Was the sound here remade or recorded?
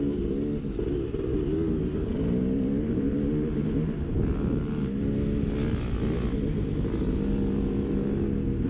recorded